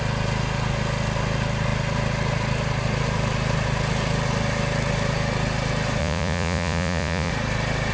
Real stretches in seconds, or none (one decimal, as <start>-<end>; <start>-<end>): 0.0-6.0; 7.3-7.9